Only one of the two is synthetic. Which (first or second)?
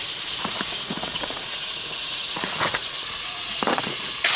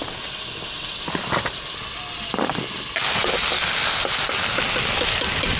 first